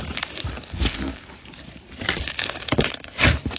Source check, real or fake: fake